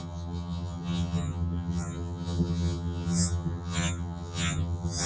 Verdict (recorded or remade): remade